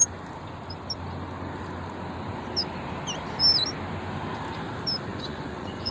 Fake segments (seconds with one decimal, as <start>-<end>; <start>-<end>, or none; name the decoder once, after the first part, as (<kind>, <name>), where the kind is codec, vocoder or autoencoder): 5.1-5.9 (vocoder, Vocos)